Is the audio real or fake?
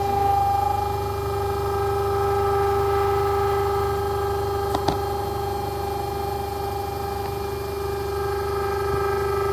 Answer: real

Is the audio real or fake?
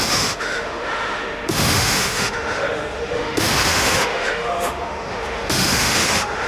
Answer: fake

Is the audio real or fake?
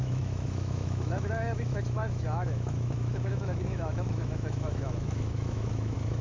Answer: fake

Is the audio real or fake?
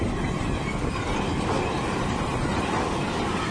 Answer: real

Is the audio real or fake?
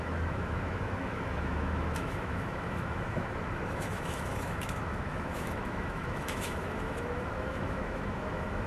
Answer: fake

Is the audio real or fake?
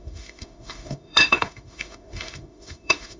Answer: fake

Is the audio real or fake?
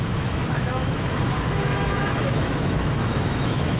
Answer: fake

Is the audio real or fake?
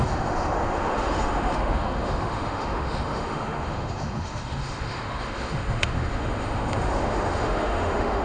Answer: fake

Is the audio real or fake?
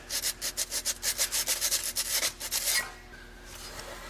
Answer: real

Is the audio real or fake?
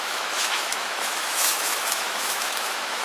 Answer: fake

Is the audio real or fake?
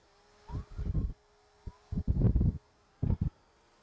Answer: real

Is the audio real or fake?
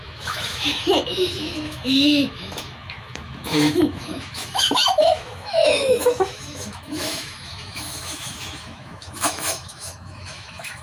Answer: fake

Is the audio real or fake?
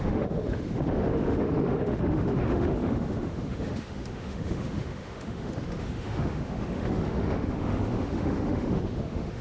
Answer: fake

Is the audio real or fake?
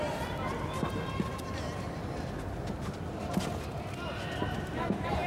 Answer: real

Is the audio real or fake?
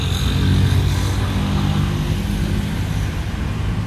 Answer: real